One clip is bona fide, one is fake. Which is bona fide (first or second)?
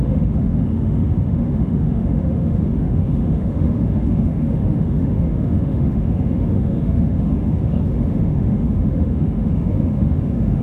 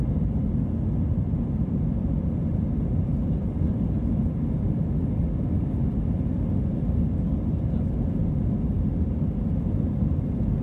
second